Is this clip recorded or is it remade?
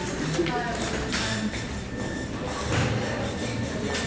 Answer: recorded